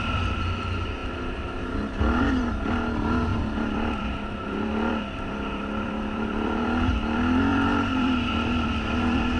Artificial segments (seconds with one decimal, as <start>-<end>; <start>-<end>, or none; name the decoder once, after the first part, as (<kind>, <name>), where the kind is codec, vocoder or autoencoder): 3.3-6.8 (vocoder, BigVGAN v2); 7.5-9.4